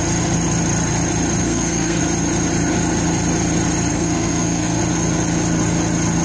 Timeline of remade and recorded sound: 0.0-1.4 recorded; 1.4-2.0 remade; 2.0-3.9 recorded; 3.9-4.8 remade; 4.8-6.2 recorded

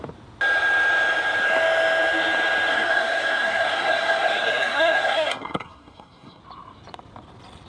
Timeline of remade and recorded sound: 0.0-2.7 recorded; 2.7-6.4 remade; 6.4-7.7 recorded